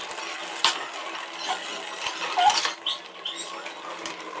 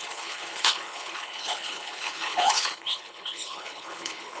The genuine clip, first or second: first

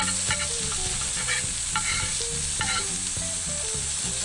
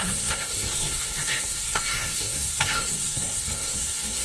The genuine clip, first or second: first